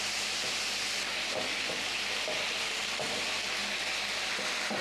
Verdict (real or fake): real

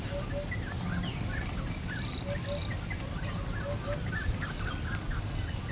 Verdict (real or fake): real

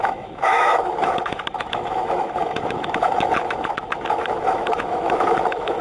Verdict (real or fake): fake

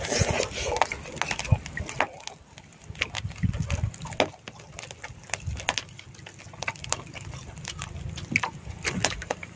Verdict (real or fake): real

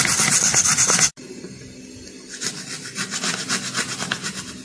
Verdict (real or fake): real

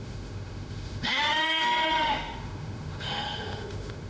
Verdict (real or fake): fake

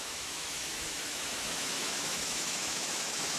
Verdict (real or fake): fake